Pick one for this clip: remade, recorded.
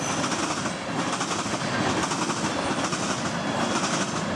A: recorded